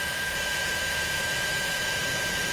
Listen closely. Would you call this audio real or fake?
fake